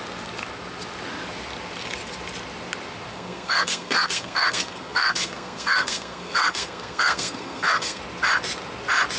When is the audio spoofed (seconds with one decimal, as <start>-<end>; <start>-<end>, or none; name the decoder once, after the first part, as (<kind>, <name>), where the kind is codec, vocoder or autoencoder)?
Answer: 3.1-8.0 (codec, SNAC)